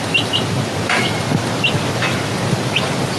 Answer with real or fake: real